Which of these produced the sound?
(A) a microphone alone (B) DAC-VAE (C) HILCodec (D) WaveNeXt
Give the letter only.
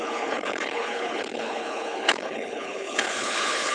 C